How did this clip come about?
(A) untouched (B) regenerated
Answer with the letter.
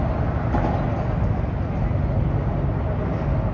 A